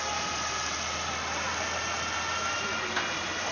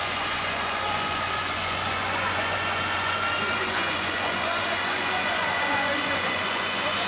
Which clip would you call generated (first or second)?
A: second